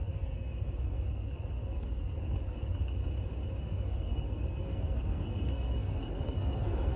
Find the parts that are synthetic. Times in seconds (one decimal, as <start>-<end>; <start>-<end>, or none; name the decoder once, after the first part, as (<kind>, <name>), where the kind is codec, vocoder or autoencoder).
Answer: 0.0-3.0 (codec, SNAC); 3.6-7.0